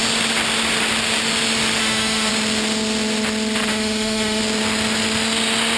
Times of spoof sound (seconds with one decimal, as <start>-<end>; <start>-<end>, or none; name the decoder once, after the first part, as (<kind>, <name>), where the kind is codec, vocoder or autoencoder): 1.8-2.3 (autoencoder, DAC-VAE); 3.7-4.4